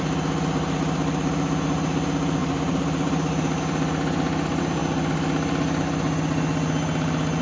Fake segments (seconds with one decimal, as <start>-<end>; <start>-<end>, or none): 2.4-3.6